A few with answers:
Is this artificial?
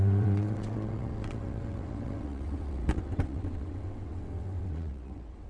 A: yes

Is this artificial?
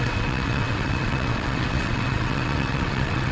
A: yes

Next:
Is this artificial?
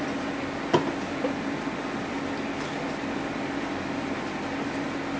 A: no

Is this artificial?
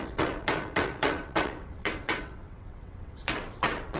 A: yes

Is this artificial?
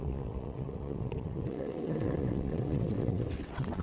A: yes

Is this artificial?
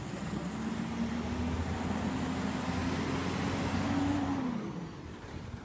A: no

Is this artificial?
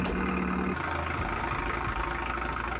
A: no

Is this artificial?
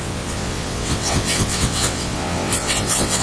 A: yes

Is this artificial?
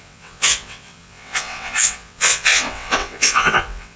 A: yes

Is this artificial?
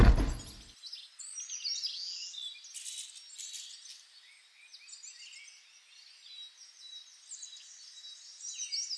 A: no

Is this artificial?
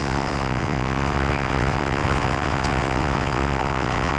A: yes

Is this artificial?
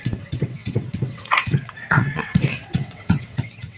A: yes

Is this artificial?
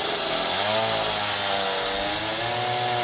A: no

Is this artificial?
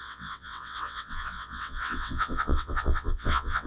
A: yes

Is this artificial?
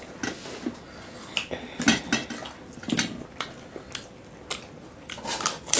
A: no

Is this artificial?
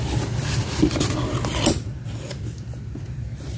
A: no